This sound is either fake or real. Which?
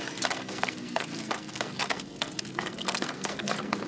fake